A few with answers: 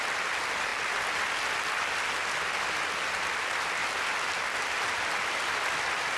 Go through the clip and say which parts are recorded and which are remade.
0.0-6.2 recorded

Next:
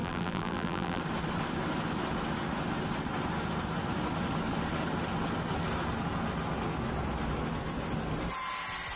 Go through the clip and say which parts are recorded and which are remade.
0.0-1.0 remade; 1.0-9.0 recorded

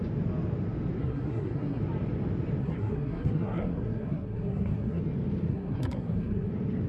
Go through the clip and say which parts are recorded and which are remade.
0.0-1.0 recorded; 1.0-1.8 remade; 1.8-2.6 recorded; 2.6-5.0 remade; 5.0-5.5 recorded; 5.5-6.5 remade; 6.5-6.9 recorded